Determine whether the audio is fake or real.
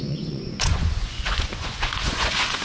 fake